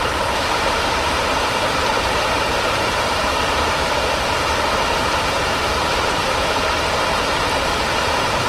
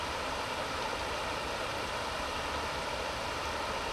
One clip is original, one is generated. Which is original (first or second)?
second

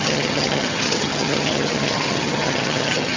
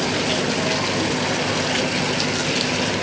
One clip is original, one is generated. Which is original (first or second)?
second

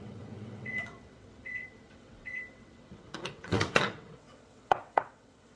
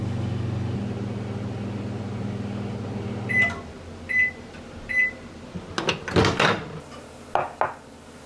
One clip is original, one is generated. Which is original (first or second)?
second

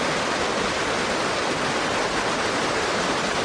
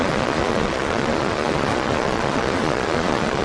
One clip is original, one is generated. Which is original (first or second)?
first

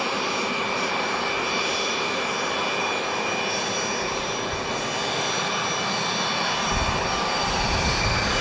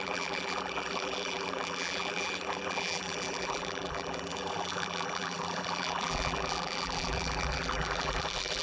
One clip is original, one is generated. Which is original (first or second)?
first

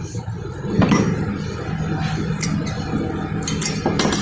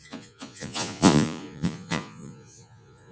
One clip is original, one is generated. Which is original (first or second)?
first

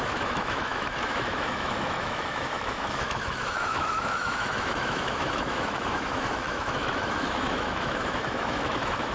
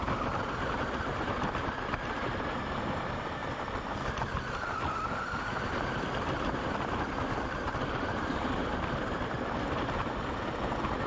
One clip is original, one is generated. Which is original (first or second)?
second